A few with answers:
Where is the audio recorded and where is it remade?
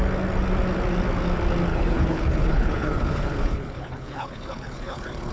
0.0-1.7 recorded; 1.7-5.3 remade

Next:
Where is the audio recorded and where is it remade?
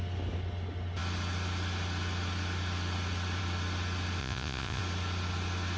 0.0-4.2 recorded; 4.2-4.8 remade; 4.8-5.8 recorded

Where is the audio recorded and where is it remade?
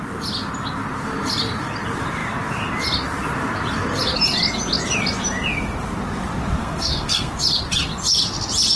0.0-6.6 recorded; 6.6-7.3 remade; 7.3-8.8 recorded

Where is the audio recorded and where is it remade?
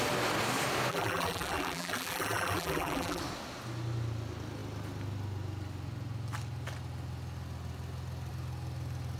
0.0-0.9 recorded; 0.9-3.2 remade; 3.2-9.2 recorded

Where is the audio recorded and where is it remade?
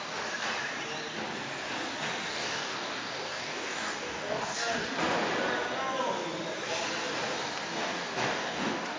0.0-2.3 recorded; 2.3-4.9 remade; 4.9-7.9 recorded; 7.9-9.0 remade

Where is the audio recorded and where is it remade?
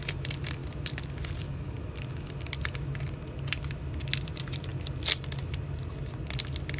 0.0-6.8 recorded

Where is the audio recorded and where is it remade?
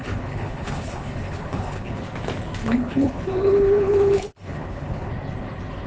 0.0-2.0 remade; 2.0-2.6 recorded; 2.6-5.1 remade; 5.1-5.9 recorded